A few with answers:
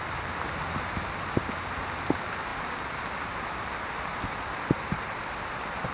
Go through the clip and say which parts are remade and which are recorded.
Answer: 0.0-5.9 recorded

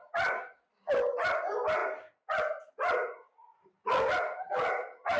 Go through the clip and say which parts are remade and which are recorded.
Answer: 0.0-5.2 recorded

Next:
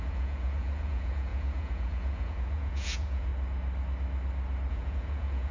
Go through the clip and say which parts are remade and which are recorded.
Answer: 0.0-3.3 remade; 3.3-4.7 recorded; 4.7-5.5 remade

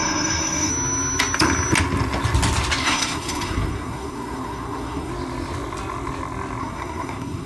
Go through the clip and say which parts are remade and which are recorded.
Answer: 0.0-0.7 remade; 0.7-2.8 recorded; 2.8-5.1 remade; 5.1-6.6 recorded; 6.6-7.5 remade

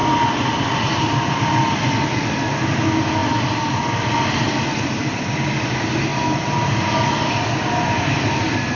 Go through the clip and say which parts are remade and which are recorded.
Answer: 0.0-8.8 recorded

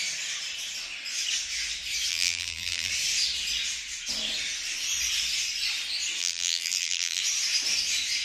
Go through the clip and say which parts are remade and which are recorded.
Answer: 0.0-2.1 recorded; 2.1-2.9 remade; 2.9-6.2 recorded; 6.2-7.2 remade; 7.2-8.2 recorded

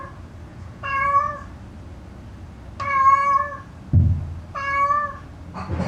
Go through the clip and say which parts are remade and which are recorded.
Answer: 0.0-0.5 recorded; 0.5-1.3 remade; 1.3-5.9 recorded